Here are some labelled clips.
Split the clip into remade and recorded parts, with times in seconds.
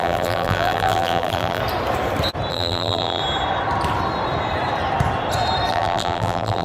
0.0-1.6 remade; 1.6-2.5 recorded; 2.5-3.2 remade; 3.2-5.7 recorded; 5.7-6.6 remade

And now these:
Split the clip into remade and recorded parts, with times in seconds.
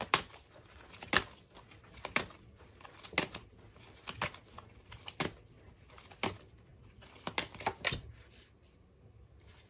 0.0-9.7 recorded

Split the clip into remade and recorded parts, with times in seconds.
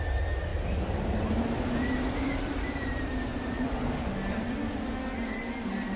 0.0-0.5 recorded; 0.5-4.1 remade; 4.1-6.0 recorded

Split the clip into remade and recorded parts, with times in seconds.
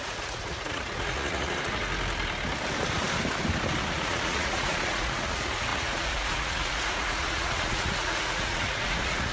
0.0-1.8 remade; 1.8-3.8 recorded; 3.8-9.3 remade